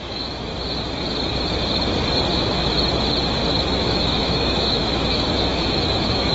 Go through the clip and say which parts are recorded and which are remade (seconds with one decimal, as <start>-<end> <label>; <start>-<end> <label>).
0.0-0.5 remade; 0.5-2.3 recorded; 2.3-2.7 remade; 2.7-3.8 recorded; 3.8-6.3 remade